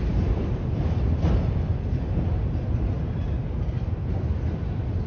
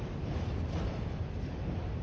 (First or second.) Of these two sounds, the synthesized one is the second